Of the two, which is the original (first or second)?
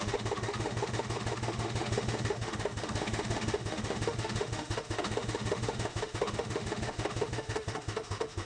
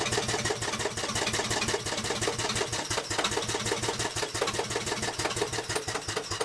second